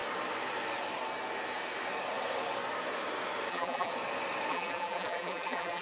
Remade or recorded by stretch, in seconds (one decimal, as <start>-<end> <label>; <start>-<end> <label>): 0.0-3.5 recorded; 3.5-3.9 remade; 3.9-4.5 recorded; 4.5-5.8 remade